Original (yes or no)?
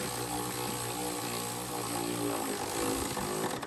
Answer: yes